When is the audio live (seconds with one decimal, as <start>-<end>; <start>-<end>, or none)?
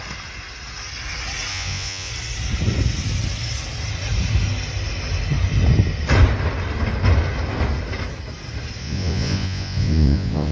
0.0-1.5; 2.1-8.8